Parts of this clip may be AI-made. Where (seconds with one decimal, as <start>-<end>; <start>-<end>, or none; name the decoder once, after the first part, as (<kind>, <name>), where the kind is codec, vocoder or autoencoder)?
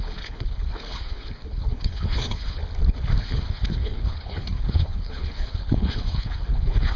0.0-2.6 (codec, HILCodec); 3.2-7.0